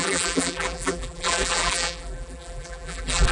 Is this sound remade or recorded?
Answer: remade